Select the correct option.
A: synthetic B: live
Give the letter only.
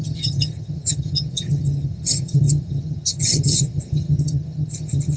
A